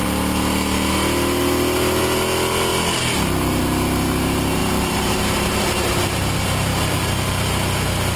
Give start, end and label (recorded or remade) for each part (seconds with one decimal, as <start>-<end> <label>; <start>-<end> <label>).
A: 0.0-4.6 recorded; 4.6-6.3 remade; 6.3-6.7 recorded; 6.7-8.2 remade

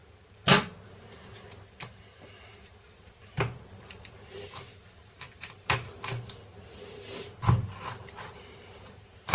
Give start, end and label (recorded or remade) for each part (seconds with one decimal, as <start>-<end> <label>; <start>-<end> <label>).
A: 0.0-9.3 remade

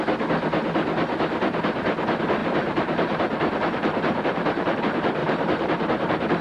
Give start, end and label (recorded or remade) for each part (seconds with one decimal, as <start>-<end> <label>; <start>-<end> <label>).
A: 0.0-2.4 recorded; 2.4-4.8 remade; 4.8-5.2 recorded; 5.2-6.4 remade